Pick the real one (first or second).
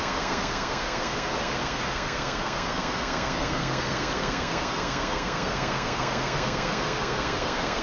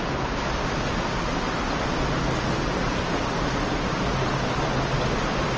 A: second